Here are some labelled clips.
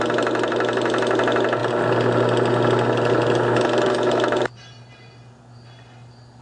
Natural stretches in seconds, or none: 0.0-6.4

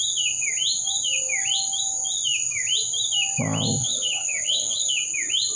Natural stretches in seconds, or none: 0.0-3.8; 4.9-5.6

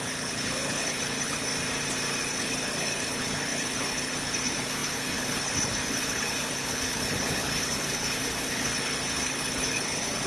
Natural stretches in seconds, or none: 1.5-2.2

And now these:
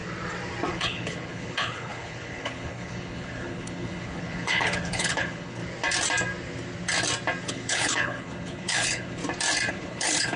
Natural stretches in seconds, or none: 0.0-0.7; 5.6-7.5; 9.2-9.7

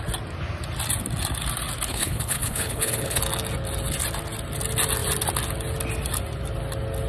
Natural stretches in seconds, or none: 0.0-1.9; 3.2-7.1

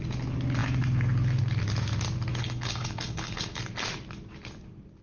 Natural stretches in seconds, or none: 0.0-2.4; 3.6-5.0

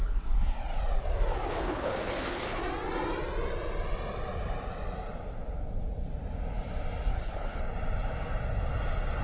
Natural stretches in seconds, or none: 0.0-1.5; 2.6-7.1; 7.6-9.2

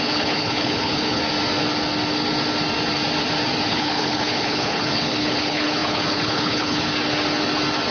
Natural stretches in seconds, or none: 1.2-3.7; 6.9-7.9